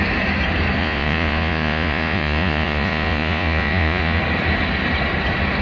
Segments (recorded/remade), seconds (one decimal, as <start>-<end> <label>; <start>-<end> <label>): 0.0-0.8 recorded; 0.8-4.2 remade; 4.2-5.6 recorded